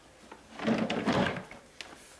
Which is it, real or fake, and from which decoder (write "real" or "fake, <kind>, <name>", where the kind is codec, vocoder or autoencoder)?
real